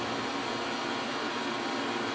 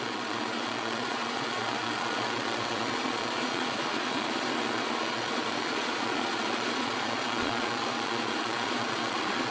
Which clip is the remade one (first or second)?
second